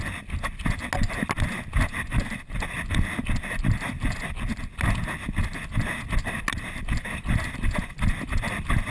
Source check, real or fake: real